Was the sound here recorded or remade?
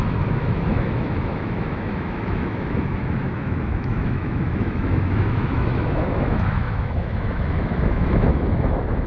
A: remade